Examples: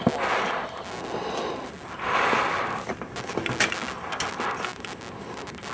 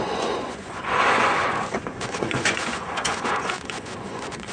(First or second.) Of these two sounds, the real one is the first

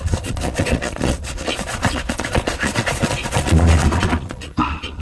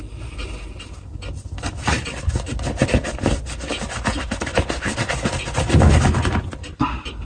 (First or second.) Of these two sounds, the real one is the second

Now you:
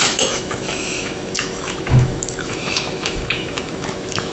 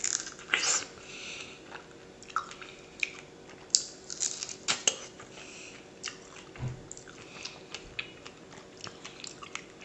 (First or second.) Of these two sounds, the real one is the second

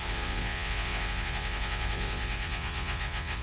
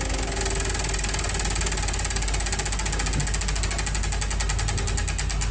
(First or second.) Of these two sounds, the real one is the second